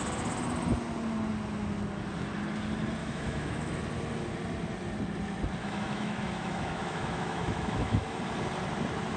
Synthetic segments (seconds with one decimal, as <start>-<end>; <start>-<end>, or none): 3.0-3.8; 5.6-8.2